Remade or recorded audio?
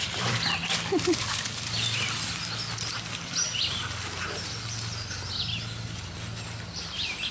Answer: recorded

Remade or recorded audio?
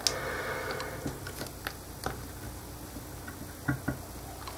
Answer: recorded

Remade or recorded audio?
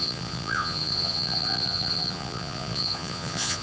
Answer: remade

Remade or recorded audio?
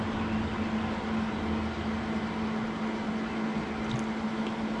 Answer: recorded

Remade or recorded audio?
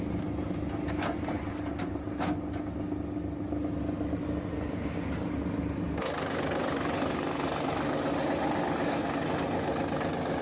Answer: recorded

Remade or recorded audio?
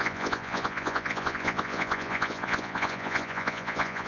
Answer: remade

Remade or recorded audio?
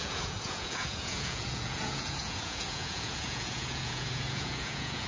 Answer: remade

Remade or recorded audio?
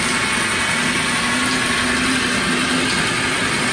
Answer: recorded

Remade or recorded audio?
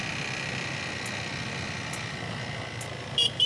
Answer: recorded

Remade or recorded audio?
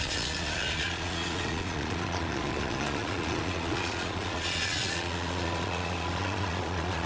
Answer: remade